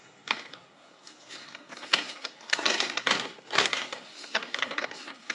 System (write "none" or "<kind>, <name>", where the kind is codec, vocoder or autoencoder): codec, SNAC